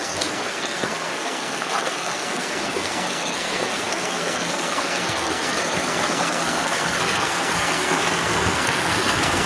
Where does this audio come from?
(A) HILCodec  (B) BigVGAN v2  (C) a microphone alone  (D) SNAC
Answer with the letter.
D